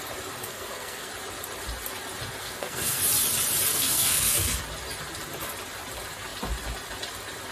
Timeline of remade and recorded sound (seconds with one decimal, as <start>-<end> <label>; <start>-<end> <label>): 0.0-0.4 recorded; 0.4-1.1 remade; 1.1-2.4 recorded; 2.4-3.0 remade; 3.0-3.7 recorded; 3.7-4.6 remade; 4.6-7.5 recorded